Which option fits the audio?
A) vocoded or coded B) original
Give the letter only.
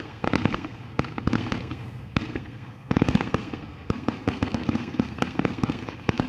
A